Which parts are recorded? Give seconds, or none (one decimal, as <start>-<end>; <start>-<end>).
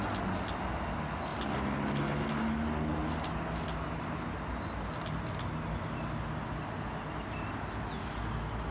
0.0-8.7